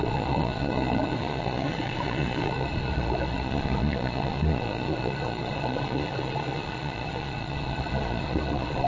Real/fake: fake